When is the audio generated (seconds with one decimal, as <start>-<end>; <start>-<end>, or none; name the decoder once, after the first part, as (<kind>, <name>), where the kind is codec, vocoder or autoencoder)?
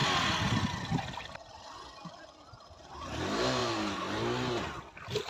none